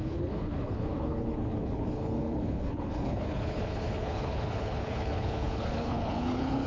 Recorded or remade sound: remade